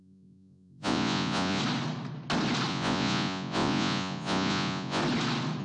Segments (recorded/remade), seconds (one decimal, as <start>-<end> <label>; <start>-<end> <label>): 0.0-1.6 remade; 1.6-2.7 recorded; 2.7-5.0 remade; 5.0-5.6 recorded